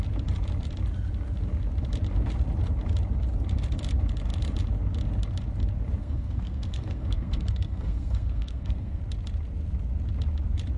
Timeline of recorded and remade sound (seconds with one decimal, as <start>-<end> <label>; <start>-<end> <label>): 0.0-6.0 recorded; 6.0-9.0 remade; 9.0-10.8 recorded